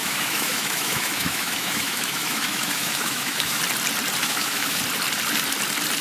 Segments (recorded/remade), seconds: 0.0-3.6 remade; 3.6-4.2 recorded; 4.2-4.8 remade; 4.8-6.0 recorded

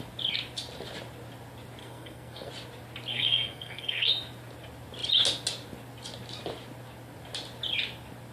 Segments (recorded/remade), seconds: 0.0-1.8 recorded; 1.8-2.5 remade; 2.5-3.1 recorded; 3.1-4.1 remade; 4.1-8.3 recorded

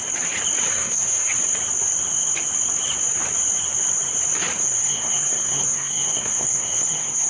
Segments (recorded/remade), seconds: 0.0-0.7 recorded; 0.7-1.3 remade; 1.3-4.6 recorded; 4.6-7.3 remade

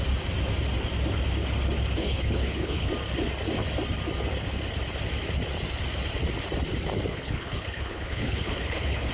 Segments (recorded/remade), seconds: 0.0-2.0 recorded; 2.0-2.9 remade; 2.9-7.1 recorded; 7.1-9.1 remade

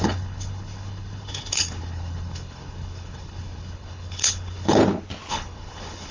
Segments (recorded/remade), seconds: 0.0-4.8 remade; 4.8-5.3 recorded; 5.3-6.1 remade

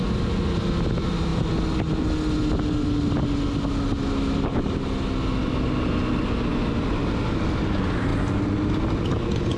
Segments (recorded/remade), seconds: 0.0-9.6 recorded

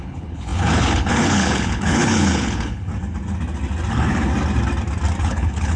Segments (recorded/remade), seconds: 0.0-2.9 remade; 2.9-3.9 recorded; 3.9-4.3 remade; 4.3-5.2 recorded; 5.2-5.8 remade